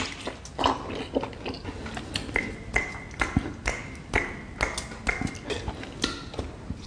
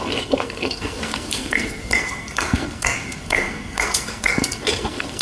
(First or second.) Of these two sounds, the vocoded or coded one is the second